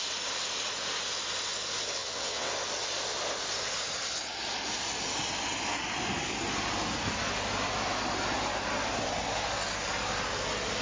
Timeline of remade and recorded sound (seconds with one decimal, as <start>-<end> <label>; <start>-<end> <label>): 0.0-2.0 recorded; 2.0-2.5 remade; 2.5-10.8 recorded